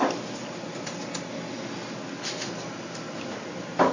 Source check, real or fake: real